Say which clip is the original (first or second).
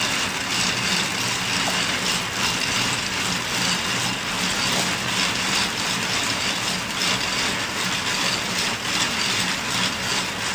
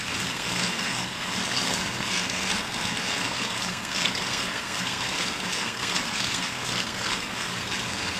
first